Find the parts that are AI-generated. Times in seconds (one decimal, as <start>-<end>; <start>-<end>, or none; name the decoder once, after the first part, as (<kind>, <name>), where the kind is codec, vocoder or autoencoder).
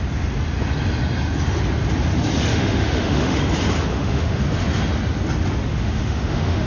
2.5-3.4 (autoencoder, DAC-VAE); 3.9-4.4; 5.7-6.7